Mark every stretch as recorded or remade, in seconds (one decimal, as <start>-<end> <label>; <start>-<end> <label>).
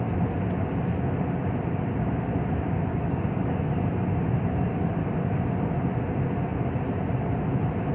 0.0-2.9 recorded; 2.9-3.6 remade; 3.6-7.9 recorded